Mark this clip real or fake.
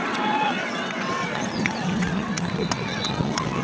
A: fake